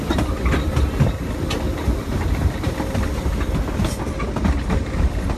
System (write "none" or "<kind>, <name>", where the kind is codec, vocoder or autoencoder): none